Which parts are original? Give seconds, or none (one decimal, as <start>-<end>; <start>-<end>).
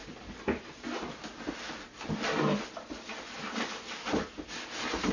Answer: 0.0-5.1